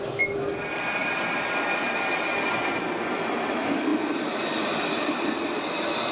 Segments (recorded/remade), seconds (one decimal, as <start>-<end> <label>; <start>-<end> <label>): 0.0-6.1 recorded